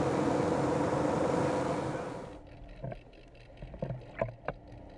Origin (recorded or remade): recorded